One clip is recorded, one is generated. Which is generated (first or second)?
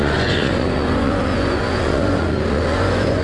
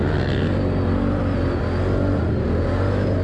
first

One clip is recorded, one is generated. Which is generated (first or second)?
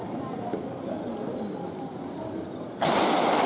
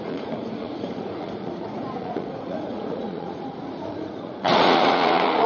second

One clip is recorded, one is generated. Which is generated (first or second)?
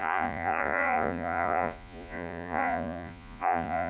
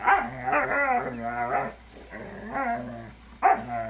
first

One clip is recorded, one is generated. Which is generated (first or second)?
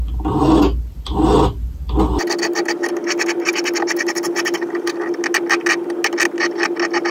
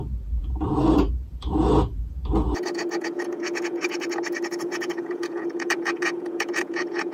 second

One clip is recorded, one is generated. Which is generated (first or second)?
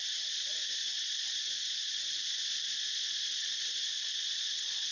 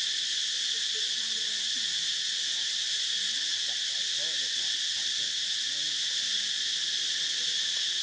first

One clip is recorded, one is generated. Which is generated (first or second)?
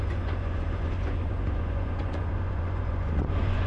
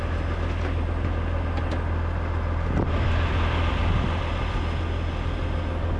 first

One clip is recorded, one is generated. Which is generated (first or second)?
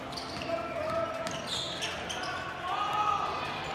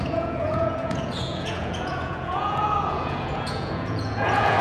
second